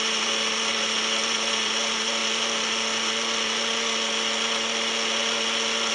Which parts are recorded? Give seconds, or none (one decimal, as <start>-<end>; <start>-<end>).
2.2-5.9